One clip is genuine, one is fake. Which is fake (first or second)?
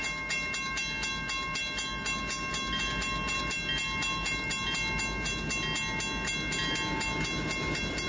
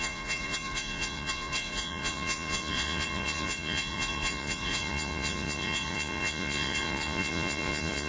second